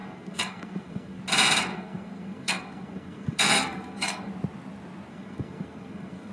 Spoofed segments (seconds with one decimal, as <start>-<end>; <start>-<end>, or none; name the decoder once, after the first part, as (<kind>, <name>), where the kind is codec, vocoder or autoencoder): 0.0-1.2 (codec, SNAC); 1.7-4.3; 5.1-6.3